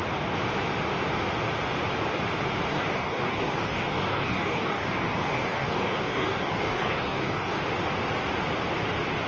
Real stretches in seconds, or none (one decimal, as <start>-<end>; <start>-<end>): 0.0-2.7; 7.6-9.3